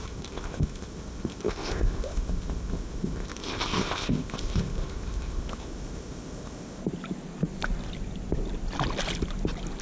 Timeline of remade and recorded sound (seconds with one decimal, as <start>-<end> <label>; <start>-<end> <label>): 0.0-6.8 remade; 6.8-9.8 recorded